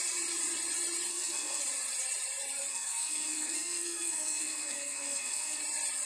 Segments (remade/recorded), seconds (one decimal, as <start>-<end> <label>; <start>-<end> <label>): 0.0-1.1 recorded; 1.1-1.6 remade; 1.6-2.7 recorded; 2.7-5.6 remade; 5.6-6.1 recorded